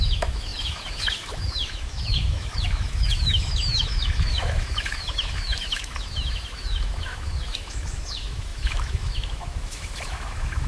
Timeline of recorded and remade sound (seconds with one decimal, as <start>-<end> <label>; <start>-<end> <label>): 0.0-10.7 remade